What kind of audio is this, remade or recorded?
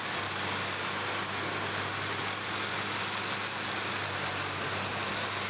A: recorded